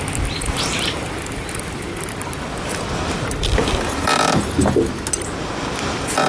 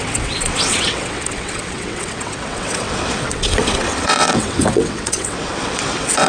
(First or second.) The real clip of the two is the first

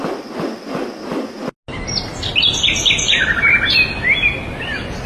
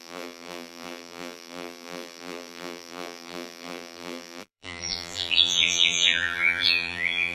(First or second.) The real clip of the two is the first